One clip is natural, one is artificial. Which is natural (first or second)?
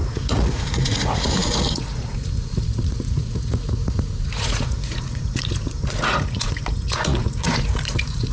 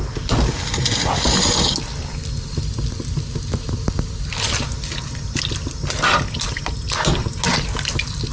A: second